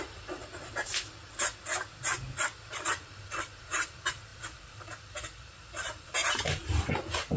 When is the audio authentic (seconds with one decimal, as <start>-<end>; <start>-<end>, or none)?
0.4-2.7